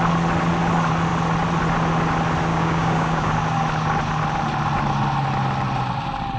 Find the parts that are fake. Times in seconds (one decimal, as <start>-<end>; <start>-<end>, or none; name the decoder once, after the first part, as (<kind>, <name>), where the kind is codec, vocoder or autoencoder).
2.5-3.3 (codec, DAC)